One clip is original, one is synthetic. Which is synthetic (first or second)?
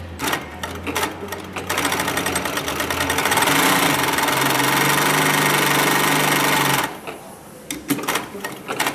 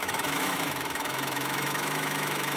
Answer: second